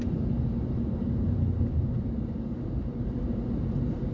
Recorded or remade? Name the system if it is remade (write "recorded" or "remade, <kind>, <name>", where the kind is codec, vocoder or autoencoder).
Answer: remade, vocoder, BigVGAN v2